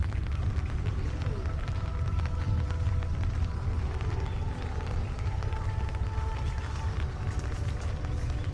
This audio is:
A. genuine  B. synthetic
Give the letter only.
A